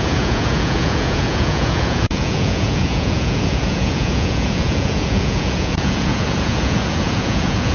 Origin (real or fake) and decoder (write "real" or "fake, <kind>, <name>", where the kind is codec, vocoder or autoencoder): fake, vocoder, Vocos